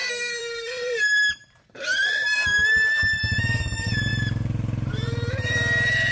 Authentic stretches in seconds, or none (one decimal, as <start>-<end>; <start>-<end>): 1.6-4.1; 4.9-6.1